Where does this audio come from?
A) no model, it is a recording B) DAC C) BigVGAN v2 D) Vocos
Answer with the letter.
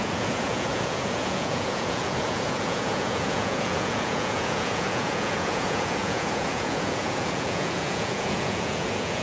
D